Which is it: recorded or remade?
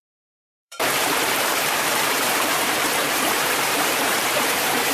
remade